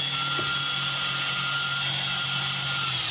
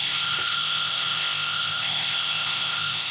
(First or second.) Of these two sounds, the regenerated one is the second